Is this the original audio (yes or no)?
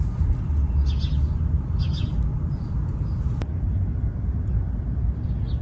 yes